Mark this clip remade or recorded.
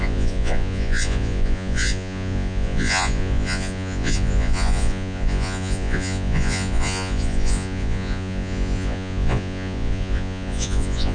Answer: remade